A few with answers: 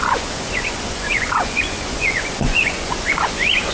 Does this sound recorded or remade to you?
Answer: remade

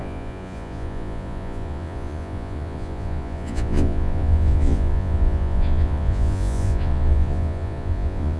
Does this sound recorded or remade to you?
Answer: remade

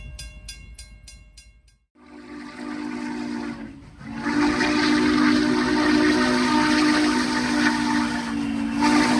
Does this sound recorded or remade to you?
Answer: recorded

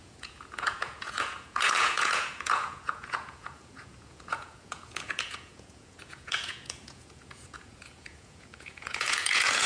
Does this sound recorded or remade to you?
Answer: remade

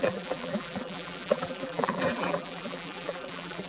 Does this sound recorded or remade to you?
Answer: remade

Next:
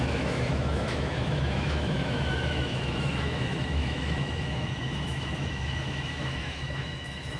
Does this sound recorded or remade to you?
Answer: remade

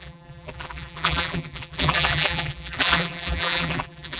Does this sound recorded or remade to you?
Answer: remade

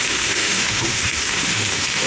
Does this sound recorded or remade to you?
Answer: remade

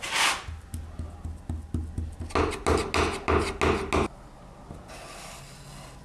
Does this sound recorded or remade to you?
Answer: recorded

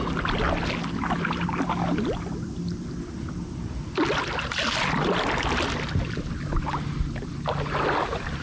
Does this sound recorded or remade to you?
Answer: recorded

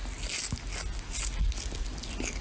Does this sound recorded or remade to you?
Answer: recorded